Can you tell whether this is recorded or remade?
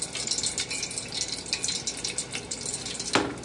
recorded